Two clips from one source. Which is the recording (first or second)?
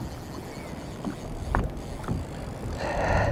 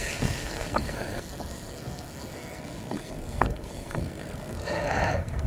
first